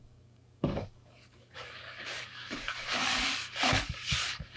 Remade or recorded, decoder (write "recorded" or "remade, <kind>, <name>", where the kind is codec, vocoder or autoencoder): remade, codec, DAC